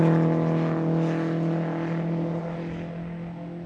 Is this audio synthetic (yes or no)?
no